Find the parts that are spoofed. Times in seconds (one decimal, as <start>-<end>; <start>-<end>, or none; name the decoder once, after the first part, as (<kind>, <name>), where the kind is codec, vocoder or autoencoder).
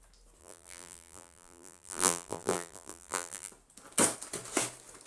0.4-3.5 (vocoder, BigVGAN v2)